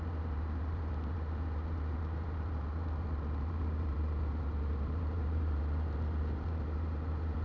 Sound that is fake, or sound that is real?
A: fake